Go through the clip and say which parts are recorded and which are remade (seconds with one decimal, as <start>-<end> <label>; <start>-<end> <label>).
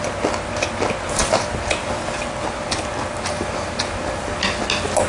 0.0-5.1 recorded